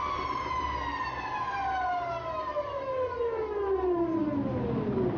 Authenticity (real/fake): real